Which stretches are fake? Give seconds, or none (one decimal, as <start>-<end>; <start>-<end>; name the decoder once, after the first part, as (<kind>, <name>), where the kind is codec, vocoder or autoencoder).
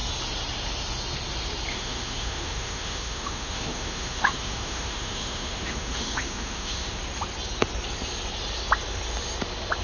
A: 1.7-7.0 (autoencoder, DAC-VAE)